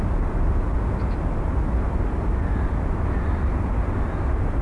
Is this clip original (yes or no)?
yes